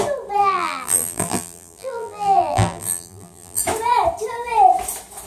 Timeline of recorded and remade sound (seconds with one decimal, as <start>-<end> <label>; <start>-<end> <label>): 0.0-0.4 recorded; 0.4-3.6 remade; 3.6-5.3 recorded